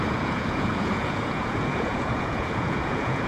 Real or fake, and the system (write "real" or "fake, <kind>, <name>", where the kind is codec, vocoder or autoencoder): fake, vocoder, Vocos